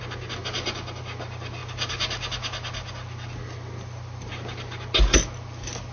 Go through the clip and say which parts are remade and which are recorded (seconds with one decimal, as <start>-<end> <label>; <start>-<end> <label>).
0.0-5.9 recorded